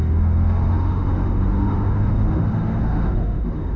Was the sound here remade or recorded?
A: remade